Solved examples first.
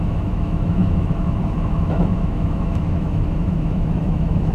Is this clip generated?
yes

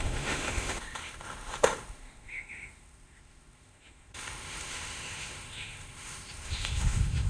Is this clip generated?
yes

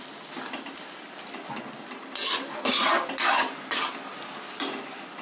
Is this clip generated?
no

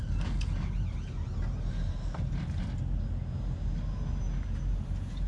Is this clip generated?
no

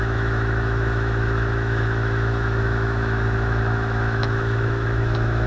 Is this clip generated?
yes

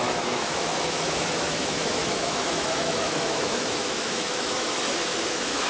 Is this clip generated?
yes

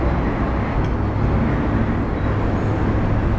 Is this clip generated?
no